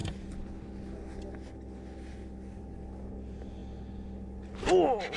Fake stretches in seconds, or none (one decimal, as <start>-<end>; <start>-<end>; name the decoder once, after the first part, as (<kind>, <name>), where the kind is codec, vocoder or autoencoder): none